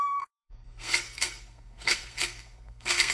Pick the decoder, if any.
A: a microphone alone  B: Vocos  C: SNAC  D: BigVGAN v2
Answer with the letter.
C